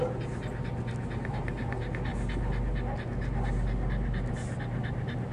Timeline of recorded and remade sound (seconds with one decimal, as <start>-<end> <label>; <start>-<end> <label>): 0.0-5.3 recorded